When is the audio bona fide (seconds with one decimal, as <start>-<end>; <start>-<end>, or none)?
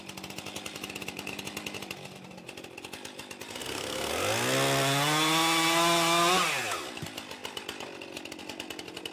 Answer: 0.0-3.6; 4.1-9.1